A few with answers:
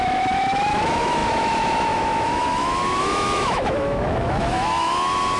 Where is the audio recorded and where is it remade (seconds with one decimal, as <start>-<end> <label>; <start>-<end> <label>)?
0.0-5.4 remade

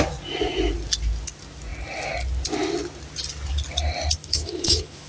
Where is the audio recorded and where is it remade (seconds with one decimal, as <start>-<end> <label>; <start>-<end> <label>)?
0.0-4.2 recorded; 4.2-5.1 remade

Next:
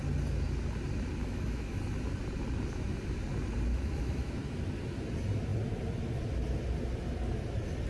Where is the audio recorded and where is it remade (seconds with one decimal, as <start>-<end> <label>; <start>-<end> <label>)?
0.0-1.2 recorded; 1.2-1.8 remade; 1.8-3.7 recorded; 3.7-4.3 remade; 4.3-7.9 recorded

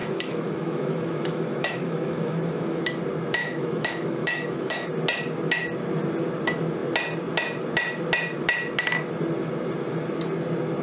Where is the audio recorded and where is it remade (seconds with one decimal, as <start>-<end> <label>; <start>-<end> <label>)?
0.0-2.8 remade; 2.8-3.4 recorded; 3.4-4.9 remade; 4.9-10.8 recorded